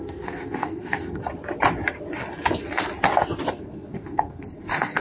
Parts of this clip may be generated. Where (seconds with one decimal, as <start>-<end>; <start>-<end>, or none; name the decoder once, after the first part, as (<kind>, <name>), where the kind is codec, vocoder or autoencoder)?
0.0-1.2 (codec, SNAC); 3.5-5.0